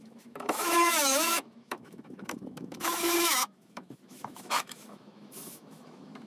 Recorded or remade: remade